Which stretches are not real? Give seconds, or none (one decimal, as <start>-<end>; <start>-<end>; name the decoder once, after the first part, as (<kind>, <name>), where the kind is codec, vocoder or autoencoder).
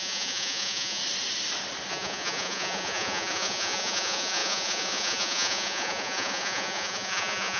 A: 0.0-1.0 (vocoder, Vocos); 1.9-7.6